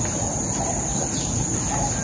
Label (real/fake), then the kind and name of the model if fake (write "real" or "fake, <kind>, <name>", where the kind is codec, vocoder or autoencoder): real